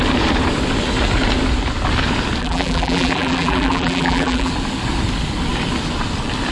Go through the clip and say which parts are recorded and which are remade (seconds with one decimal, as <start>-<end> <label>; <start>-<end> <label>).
0.0-2.4 recorded; 2.4-4.5 remade; 4.5-6.5 recorded